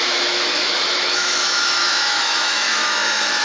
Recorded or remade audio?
remade